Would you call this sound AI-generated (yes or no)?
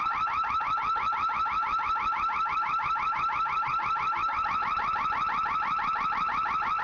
no